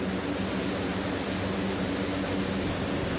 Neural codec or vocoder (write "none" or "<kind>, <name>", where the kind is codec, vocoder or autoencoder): none